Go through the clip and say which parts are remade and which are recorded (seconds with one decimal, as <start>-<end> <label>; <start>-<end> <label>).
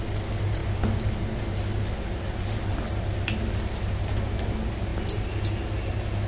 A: 0.0-6.3 recorded